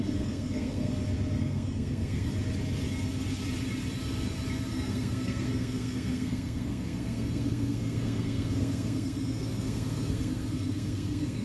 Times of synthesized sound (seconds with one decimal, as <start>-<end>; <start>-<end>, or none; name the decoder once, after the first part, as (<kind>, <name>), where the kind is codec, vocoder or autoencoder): 0.0-0.9 (codec, SNAC); 1.4-2.3; 4.7-11.4